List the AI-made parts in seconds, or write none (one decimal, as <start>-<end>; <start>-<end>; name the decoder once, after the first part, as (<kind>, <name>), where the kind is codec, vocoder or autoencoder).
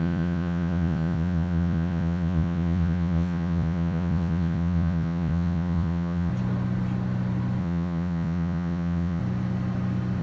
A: 0.0-6.3 (vocoder, Vocos); 7.6-9.2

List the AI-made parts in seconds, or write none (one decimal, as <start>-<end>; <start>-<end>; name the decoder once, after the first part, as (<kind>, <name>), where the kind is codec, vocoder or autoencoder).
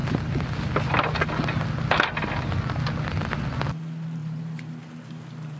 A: 4.2-4.7 (vocoder, BigVGAN v2)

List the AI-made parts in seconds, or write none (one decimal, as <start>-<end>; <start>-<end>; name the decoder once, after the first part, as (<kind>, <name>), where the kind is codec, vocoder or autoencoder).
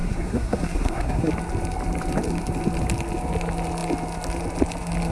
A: 0.0-1.3 (codec, SNAC)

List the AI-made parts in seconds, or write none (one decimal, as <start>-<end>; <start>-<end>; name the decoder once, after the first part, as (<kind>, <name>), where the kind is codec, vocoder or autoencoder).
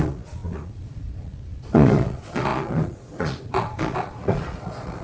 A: 0.0-5.0 (vocoder, Vocos)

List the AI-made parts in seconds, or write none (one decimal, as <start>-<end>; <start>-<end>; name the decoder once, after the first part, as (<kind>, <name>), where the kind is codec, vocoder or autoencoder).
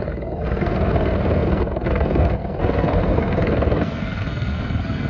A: 0.0-5.1 (codec, SNAC)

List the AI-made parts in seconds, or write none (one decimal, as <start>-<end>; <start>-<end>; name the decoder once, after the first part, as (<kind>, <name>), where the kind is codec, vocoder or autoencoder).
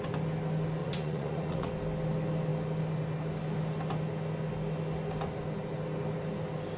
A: 0.8-1.7 (vocoder, Vocos)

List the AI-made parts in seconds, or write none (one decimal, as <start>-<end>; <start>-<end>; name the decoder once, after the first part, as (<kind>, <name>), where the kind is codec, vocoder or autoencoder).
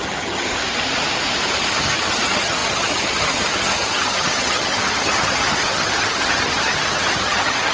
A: 0.0-0.5 (vocoder, HiFi-GAN); 1.8-7.7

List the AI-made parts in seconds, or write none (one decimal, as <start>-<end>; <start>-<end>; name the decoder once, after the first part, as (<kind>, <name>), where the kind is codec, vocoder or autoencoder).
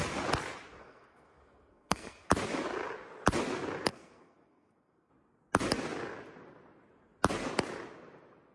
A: 0.8-2.3 (codec, SNAC); 3.9-5.1